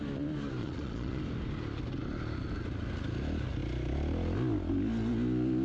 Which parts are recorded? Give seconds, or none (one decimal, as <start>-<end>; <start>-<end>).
0.0-0.6; 1.2-5.6